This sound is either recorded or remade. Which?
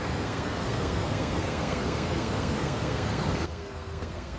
remade